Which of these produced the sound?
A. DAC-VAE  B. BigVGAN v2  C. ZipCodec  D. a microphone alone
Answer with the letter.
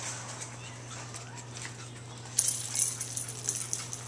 D